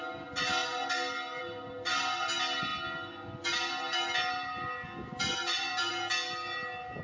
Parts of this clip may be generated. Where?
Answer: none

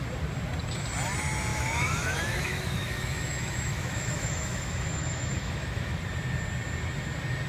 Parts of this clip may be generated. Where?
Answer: 1.5-6.0 (autoencoder, DAC-VAE)

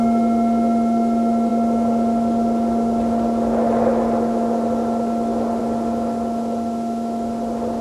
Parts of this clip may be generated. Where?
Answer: none

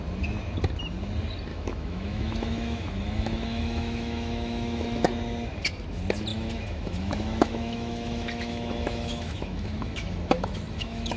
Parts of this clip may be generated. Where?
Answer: 1.5-5.0 (autoencoder, DAC-VAE); 6.3-11.2

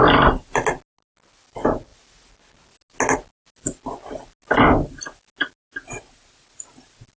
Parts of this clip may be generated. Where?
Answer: none

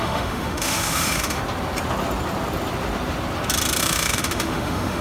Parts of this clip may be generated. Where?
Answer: 0.0-1.4 (autoencoder, DAC-VAE); 3.8-5.0